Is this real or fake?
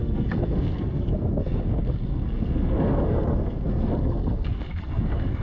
fake